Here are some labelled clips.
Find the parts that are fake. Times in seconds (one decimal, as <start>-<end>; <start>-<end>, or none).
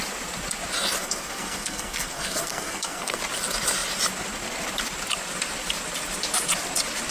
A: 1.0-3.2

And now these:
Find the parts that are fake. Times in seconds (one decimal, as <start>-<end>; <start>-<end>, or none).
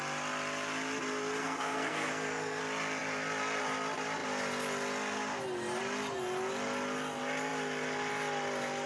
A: 1.4-2.6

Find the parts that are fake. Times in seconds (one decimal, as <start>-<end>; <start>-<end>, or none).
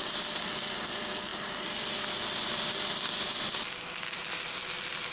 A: none